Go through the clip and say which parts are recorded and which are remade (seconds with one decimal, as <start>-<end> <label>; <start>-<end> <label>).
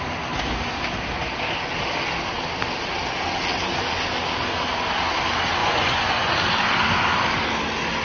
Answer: 0.0-5.6 recorded; 5.6-6.3 remade; 6.3-8.0 recorded